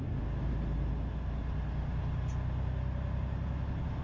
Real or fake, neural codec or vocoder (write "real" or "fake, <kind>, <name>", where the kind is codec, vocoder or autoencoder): real